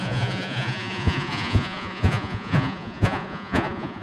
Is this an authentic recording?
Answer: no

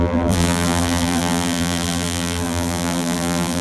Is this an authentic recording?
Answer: no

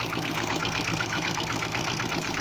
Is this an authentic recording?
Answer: no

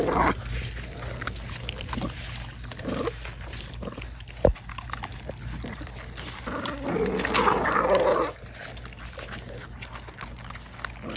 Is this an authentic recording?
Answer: yes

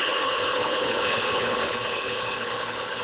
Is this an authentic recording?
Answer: no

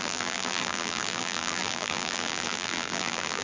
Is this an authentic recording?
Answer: no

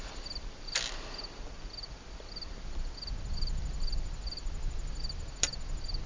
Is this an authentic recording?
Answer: yes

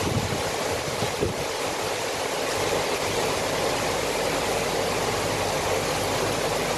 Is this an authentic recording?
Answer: yes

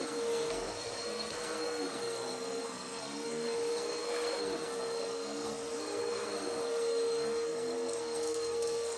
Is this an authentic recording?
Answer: no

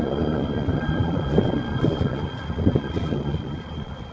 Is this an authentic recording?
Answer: no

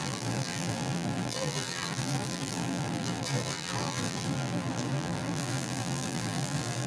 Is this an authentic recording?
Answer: no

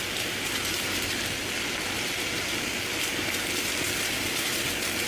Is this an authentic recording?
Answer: yes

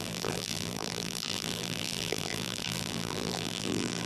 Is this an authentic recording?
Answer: no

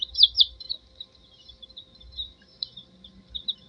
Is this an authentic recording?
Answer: no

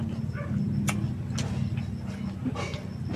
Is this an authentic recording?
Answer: yes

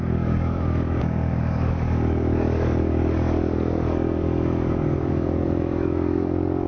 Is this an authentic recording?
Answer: no